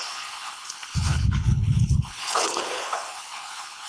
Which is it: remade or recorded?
remade